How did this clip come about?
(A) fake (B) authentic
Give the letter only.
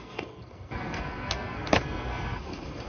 A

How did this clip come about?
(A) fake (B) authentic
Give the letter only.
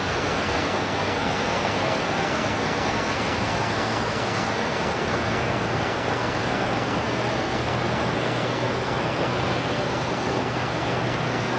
A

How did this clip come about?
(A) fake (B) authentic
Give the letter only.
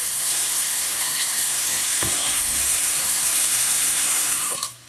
A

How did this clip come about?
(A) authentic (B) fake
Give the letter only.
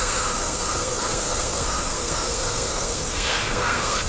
B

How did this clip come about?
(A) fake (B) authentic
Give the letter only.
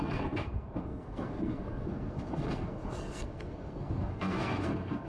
A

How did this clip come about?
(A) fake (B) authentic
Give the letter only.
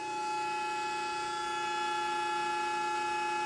B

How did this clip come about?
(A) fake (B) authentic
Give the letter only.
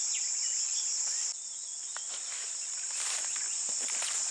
B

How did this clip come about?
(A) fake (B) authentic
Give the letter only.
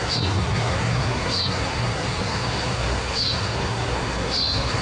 A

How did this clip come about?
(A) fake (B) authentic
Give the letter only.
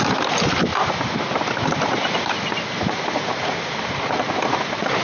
B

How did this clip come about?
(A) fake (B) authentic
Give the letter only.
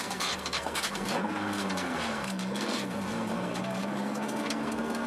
A